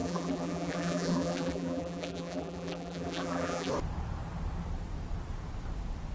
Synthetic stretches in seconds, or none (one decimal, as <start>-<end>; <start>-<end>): 0.0-3.7

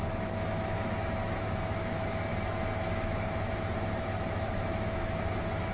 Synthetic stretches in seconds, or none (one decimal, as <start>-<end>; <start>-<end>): 0.0-2.3; 2.8-5.7